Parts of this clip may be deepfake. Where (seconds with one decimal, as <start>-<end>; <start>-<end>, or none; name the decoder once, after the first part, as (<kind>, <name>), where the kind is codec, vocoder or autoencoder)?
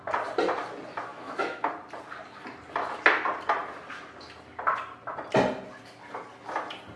1.1-1.7 (autoencoder, DAC-VAE)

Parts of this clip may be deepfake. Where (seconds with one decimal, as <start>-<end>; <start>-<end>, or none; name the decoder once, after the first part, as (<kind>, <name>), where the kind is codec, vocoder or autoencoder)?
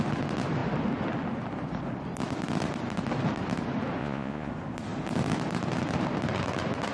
4.0-4.5 (vocoder, Vocos)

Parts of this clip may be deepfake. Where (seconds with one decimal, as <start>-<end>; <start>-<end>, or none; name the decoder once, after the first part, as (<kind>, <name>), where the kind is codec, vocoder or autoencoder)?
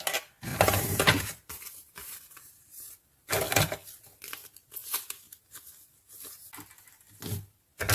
0.5-2.9 (vocoder, BigVGAN v2)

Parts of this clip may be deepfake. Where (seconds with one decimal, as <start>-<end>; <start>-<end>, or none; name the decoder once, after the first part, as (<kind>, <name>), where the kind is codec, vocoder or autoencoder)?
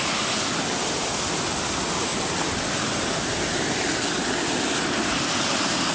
none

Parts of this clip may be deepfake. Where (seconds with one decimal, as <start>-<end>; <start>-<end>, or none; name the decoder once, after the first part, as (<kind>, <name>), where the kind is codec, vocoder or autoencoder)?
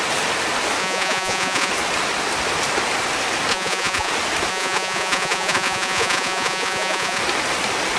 0.8-1.7 (vocoder, Vocos); 3.5-4.1; 4.5-7.2